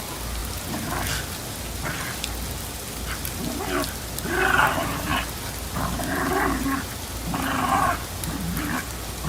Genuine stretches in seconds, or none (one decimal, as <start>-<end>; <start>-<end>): 0.0-9.3